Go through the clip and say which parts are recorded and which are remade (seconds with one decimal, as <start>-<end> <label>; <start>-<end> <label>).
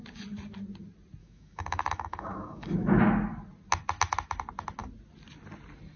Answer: 0.0-1.2 recorded; 1.2-3.0 remade; 3.0-6.0 recorded